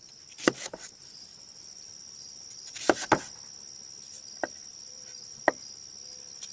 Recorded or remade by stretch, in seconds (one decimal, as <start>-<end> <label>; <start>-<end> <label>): 0.0-1.3 recorded; 1.3-3.2 remade; 3.2-4.7 recorded; 4.7-5.5 remade; 5.5-6.5 recorded

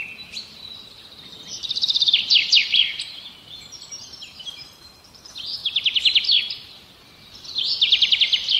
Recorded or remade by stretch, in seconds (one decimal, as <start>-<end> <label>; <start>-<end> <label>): 0.0-5.6 remade; 5.6-6.7 recorded; 6.7-8.6 remade

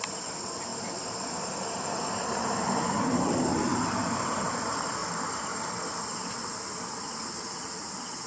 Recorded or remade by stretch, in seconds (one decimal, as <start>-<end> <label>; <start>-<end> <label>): 0.0-0.7 recorded; 0.7-2.5 remade; 2.5-3.7 recorded; 3.7-4.5 remade; 4.5-8.3 recorded

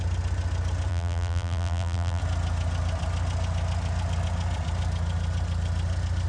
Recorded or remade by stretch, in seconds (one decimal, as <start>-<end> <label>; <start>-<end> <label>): 0.0-0.9 recorded; 0.9-2.2 remade; 2.2-6.3 recorded